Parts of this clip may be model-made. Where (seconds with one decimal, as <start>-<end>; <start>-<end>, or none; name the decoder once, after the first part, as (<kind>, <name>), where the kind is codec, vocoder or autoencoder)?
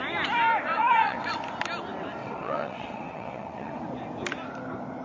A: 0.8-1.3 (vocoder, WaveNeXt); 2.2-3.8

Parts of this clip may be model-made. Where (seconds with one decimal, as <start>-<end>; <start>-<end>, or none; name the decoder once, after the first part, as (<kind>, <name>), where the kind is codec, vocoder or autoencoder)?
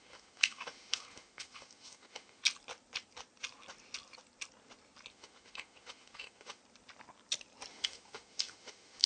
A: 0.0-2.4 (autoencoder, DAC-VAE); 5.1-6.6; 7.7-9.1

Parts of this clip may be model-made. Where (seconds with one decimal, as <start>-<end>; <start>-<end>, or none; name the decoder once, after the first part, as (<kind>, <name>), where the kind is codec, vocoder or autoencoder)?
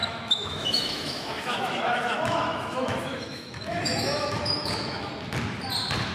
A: 0.0-5.1 (autoencoder, DAC-VAE)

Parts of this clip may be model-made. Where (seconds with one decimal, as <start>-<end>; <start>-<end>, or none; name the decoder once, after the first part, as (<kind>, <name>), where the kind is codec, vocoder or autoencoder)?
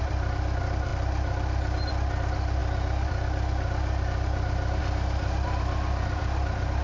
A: none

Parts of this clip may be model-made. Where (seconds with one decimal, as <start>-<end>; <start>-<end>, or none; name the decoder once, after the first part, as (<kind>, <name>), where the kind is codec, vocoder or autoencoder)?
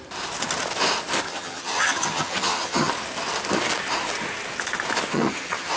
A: 1.3-2.9 (vocoder, HiFi-GAN); 5.1-5.8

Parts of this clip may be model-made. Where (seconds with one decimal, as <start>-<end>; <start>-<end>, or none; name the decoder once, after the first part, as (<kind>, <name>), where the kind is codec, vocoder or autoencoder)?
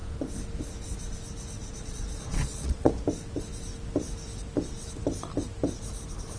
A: 1.6-2.9 (vocoder, Vocos)